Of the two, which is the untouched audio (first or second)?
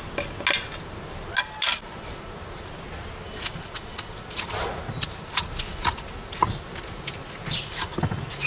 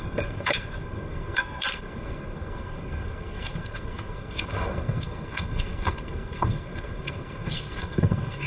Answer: first